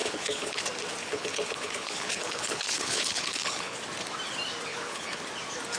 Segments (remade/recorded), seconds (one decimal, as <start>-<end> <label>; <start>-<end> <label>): 0.0-0.6 remade; 0.6-1.0 recorded; 1.0-3.8 remade; 3.8-4.7 recorded; 4.7-5.2 remade; 5.2-5.8 recorded